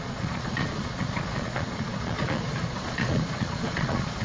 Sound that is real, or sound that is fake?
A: fake